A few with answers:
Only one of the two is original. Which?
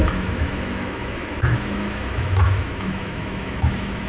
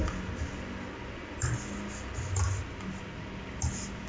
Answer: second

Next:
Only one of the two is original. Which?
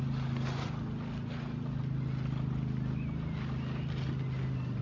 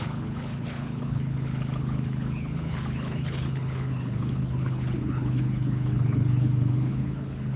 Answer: first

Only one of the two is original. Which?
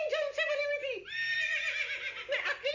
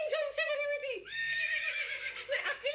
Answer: first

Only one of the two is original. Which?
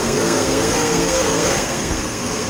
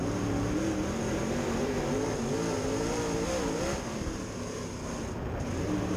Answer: second